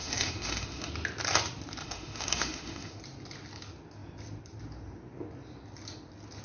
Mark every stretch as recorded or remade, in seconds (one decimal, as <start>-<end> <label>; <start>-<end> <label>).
0.0-0.9 remade; 0.9-1.8 recorded; 1.8-3.0 remade; 3.0-6.4 recorded